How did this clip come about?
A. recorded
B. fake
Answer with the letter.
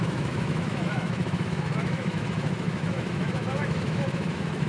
B